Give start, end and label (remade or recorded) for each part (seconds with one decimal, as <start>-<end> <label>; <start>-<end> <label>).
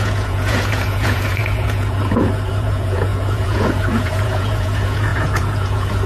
0.0-6.1 remade